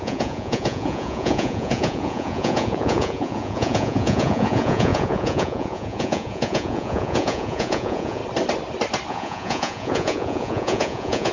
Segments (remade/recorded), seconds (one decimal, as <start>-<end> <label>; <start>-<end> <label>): 0.0-8.2 remade; 8.2-9.1 recorded; 9.1-11.3 remade